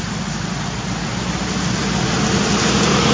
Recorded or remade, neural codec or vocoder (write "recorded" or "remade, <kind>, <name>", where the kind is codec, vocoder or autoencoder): recorded